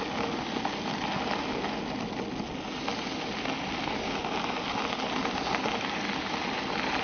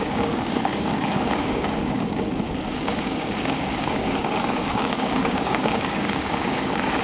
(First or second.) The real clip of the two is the first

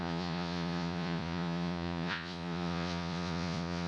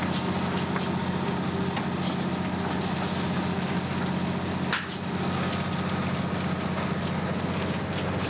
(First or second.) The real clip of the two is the second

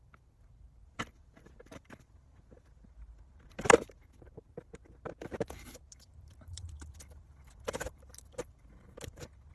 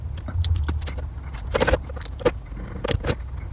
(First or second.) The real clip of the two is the second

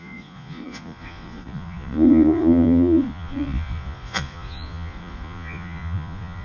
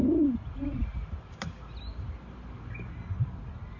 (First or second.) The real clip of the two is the second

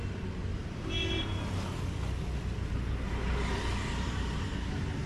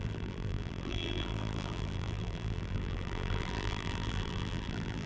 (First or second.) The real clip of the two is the first